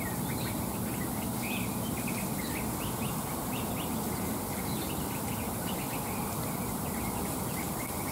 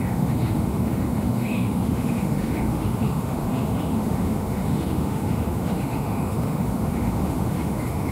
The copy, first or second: second